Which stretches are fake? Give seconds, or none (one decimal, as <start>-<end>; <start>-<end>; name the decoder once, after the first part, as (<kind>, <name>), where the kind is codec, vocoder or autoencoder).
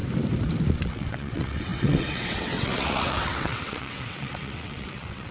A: 0.7-5.3 (vocoder, WaveNeXt)